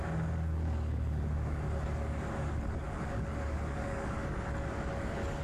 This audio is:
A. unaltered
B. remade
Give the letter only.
B